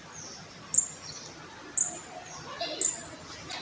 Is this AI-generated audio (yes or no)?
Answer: no